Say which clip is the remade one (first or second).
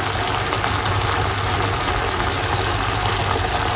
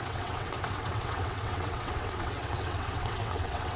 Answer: second